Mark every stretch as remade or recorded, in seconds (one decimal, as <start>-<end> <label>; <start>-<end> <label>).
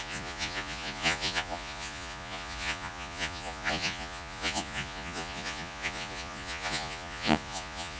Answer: 0.0-8.0 remade